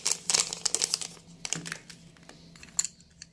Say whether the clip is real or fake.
real